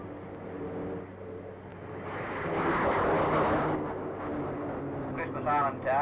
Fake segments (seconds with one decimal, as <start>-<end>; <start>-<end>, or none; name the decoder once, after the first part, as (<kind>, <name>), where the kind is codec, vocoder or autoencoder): none